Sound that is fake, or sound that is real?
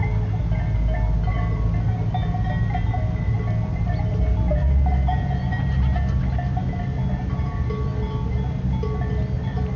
real